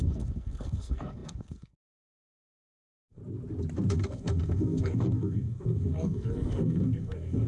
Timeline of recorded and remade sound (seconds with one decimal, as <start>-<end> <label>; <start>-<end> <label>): 0.0-3.2 remade; 3.2-3.9 recorded; 3.9-7.5 remade